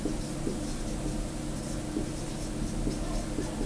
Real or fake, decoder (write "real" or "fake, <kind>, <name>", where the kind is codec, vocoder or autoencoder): real